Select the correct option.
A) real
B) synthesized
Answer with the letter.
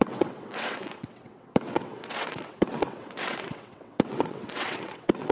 B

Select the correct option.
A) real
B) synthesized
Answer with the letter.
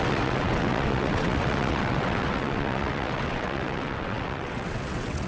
B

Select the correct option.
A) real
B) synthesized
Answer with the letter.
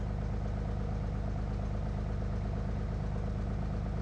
A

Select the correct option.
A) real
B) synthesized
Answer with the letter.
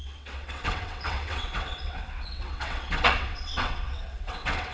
B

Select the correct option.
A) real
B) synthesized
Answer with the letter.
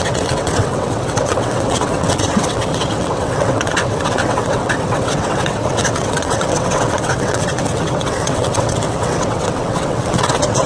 B